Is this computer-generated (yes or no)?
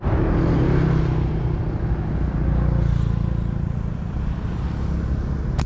no